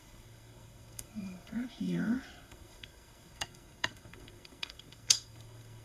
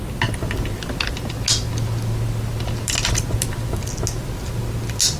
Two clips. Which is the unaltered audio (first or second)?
second